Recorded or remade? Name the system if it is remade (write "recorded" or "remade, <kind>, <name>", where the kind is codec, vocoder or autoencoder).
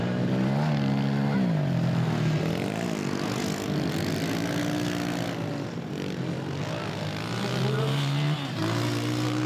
recorded